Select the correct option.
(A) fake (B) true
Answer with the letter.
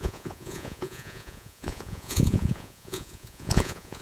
A